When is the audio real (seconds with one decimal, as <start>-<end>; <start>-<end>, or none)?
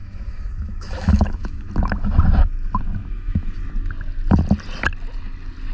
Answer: 1.7-3.0; 3.6-5.7